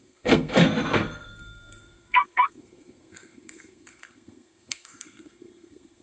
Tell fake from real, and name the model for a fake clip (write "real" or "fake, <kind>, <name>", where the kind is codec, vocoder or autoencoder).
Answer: fake, codec, SNAC